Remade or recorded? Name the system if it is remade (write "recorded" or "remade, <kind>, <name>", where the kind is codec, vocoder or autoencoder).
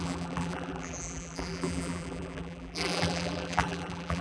remade, vocoder, BigVGAN v2